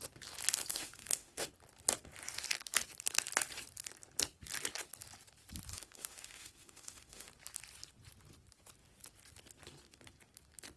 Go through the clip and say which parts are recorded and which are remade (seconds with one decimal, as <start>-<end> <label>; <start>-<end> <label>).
0.0-0.7 recorded; 0.7-1.5 remade; 1.5-5.7 recorded; 5.7-7.3 remade; 7.3-10.8 recorded